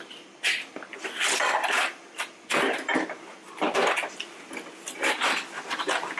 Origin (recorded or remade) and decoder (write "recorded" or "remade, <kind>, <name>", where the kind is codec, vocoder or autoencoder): remade, vocoder, BigVGAN v2